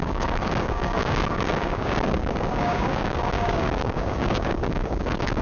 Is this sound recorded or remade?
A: remade